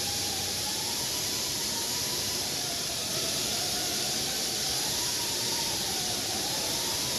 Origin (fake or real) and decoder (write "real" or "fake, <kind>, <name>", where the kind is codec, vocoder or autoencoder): fake, vocoder, BigVGAN v2